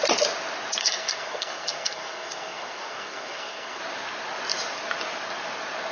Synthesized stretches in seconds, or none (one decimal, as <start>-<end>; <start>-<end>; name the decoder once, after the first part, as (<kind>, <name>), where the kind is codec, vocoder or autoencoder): 0.8-3.8 (codec, SNAC)